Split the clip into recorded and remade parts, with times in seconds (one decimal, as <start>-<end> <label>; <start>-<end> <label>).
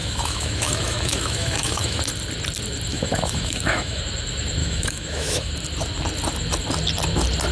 0.0-2.0 remade; 2.0-2.9 recorded; 2.9-4.0 remade; 4.0-4.6 recorded; 4.6-5.5 remade; 5.5-7.5 recorded